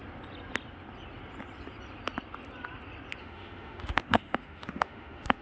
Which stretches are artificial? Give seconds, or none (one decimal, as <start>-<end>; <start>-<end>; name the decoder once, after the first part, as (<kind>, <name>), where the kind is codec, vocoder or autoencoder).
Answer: 3.2-5.4 (autoencoder, DAC-VAE)